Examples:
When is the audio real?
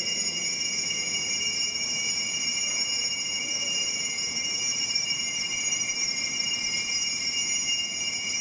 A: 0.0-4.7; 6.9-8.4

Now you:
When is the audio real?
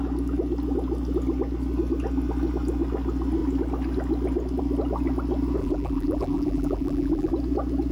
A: 0.0-5.6; 7.3-7.9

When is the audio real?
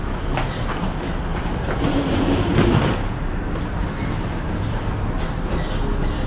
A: 0.0-1.3; 2.7-3.8; 4.8-6.3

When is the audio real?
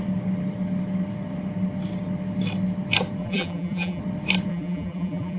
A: 0.0-3.2; 4.0-4.5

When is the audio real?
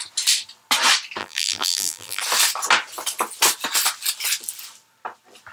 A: 0.0-1.2; 2.2-5.5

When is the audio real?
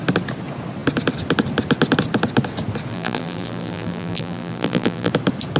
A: 0.0-2.9; 5.1-5.6